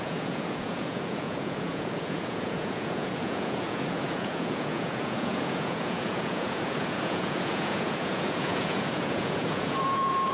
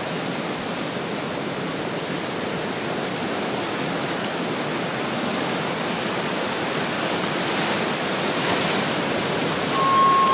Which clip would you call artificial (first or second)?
first